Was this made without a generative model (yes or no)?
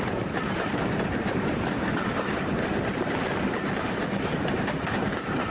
no